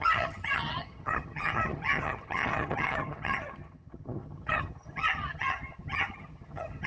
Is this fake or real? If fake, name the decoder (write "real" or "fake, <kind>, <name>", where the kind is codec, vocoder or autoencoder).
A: fake, vocoder, HiFi-GAN